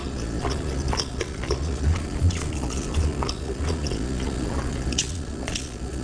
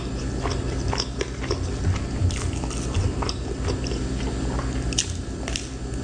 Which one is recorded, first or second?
second